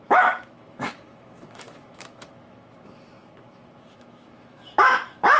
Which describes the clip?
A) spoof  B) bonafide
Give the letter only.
A